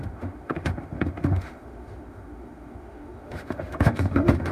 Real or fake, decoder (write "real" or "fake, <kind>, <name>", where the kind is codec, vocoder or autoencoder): fake, autoencoder, DAC-VAE